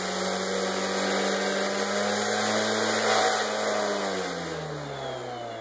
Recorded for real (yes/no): yes